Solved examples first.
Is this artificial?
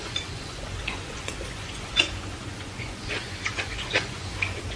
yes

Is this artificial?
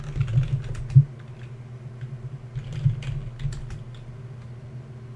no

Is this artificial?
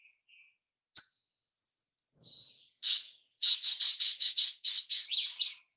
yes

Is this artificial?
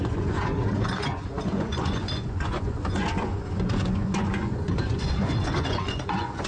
yes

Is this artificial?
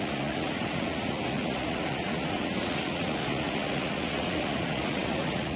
yes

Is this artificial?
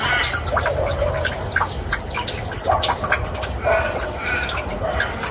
no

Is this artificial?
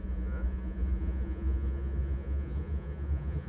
yes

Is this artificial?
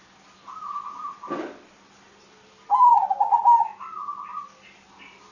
no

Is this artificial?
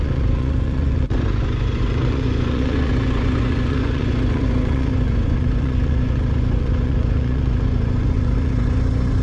yes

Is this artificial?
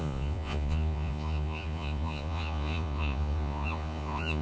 yes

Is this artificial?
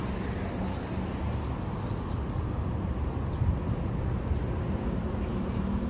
no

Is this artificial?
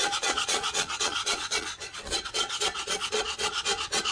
yes